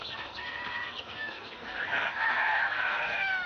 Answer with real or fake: fake